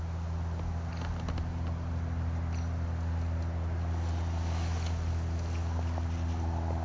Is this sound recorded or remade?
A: recorded